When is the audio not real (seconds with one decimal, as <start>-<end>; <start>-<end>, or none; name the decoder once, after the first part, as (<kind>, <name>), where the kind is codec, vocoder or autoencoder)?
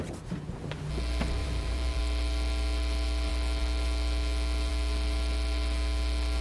1.4-2.0 (vocoder, BigVGAN v2)